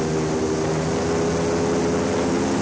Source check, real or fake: real